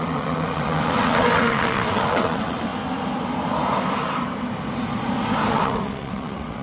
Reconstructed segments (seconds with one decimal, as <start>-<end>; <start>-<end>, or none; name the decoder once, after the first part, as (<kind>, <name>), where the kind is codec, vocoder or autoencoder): 0.0-2.7 (vocoder, WaveNeXt); 5.5-6.6